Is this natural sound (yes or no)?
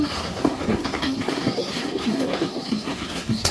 no